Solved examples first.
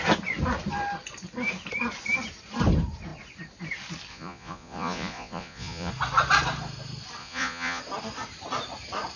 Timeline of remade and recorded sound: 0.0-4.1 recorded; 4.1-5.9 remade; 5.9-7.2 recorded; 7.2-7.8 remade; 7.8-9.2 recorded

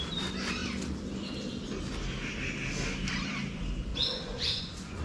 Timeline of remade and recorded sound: 0.0-3.9 recorded; 3.9-5.0 remade

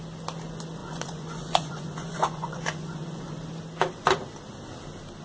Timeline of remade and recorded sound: 0.0-0.8 recorded; 0.8-3.3 remade; 3.3-5.2 recorded

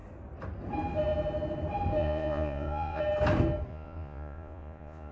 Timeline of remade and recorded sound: 0.0-2.0 recorded; 2.0-3.0 remade; 3.0-3.7 recorded; 3.7-5.1 remade